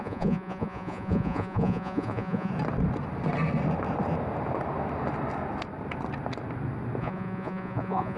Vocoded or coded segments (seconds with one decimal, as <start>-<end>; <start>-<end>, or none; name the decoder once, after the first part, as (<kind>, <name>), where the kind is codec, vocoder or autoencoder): 0.0-2.5 (vocoder, Vocos); 7.0-8.2